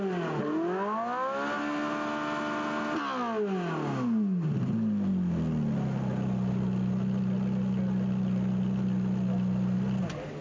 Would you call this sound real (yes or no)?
yes